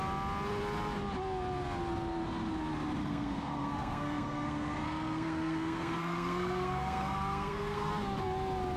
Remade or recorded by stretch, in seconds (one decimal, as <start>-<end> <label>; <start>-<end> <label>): 0.0-3.0 recorded; 3.0-7.9 remade; 7.9-8.8 recorded